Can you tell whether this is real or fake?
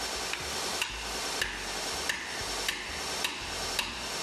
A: real